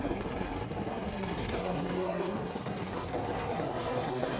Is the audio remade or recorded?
remade